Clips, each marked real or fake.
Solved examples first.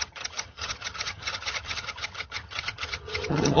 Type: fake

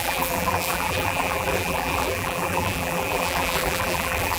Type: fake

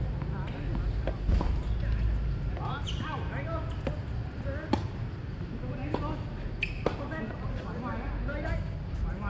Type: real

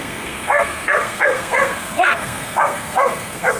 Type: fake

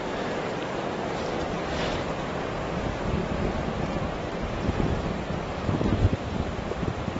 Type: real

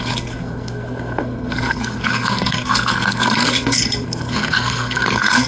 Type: fake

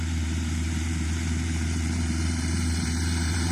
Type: fake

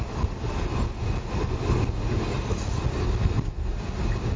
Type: real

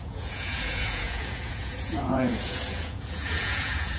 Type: fake